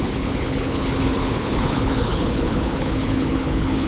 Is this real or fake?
fake